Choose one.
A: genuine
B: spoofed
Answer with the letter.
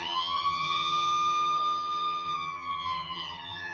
B